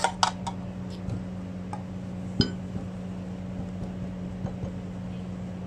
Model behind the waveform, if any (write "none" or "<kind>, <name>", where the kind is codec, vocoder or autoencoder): none